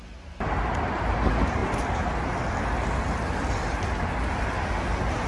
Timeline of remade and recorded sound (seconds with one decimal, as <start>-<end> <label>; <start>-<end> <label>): 0.0-5.3 recorded